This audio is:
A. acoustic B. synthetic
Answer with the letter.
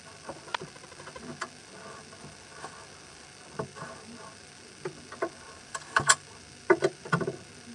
B